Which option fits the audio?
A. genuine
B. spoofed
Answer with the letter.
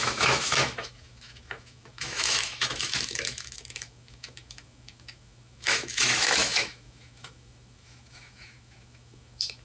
B